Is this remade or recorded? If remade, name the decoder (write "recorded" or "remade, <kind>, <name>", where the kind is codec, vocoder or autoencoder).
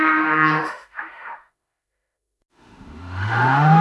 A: remade, autoencoder, DAC-VAE